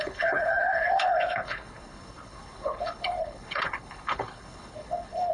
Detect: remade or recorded remade